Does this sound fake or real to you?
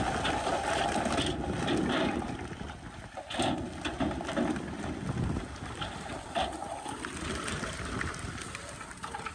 real